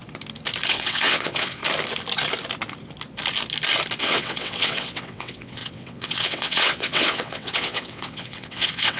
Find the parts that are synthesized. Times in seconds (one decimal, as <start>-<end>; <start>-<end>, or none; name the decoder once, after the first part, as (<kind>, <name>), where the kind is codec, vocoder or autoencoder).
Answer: 0.7-1.6 (vocoder, WaveNeXt); 4.0-9.0